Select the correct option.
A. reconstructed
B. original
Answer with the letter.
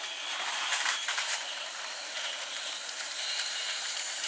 A